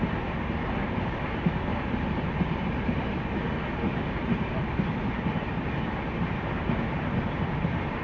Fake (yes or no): no